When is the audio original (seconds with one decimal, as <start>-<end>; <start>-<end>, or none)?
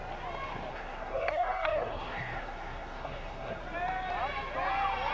0.0-0.7; 3.6-5.1